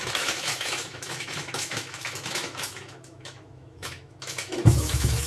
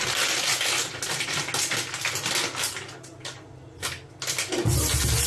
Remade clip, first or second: first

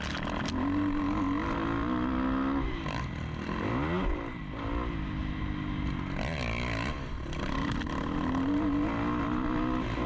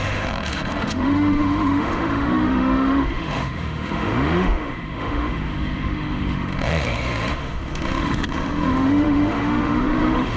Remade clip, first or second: second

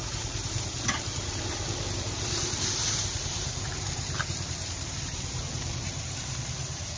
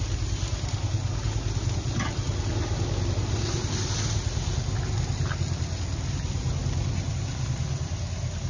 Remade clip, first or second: first